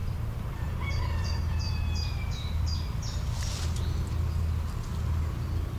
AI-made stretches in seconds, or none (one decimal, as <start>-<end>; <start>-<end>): 0.0-3.5